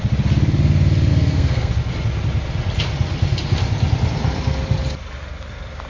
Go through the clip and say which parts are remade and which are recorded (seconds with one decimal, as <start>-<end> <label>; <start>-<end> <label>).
0.0-1.1 recorded; 1.1-1.7 remade; 1.7-5.9 recorded